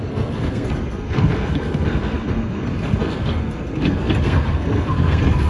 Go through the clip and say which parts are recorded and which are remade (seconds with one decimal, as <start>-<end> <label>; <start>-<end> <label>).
0.0-5.5 remade